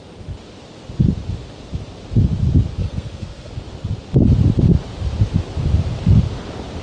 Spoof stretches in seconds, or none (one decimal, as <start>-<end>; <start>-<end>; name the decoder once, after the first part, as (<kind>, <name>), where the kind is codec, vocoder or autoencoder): 2.8-3.5 (codec, SNAC)